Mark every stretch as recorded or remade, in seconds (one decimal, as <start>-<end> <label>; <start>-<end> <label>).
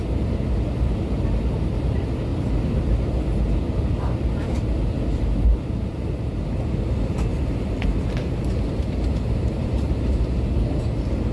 0.0-2.3 recorded; 2.3-2.8 remade; 2.8-5.1 recorded; 5.1-6.4 remade; 6.4-7.3 recorded; 7.3-9.9 remade; 9.9-11.3 recorded